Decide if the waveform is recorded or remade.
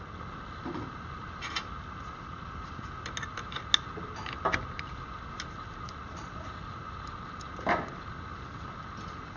recorded